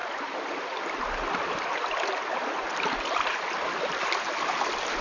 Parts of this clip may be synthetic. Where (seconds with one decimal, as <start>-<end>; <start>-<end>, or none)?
none